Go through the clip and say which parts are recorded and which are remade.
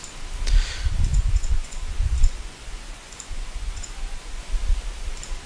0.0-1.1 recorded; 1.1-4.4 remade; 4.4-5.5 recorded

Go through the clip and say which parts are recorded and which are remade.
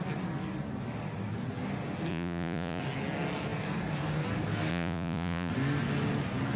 0.0-2.1 recorded; 2.1-2.8 remade; 2.8-4.7 recorded; 4.7-5.5 remade; 5.5-6.6 recorded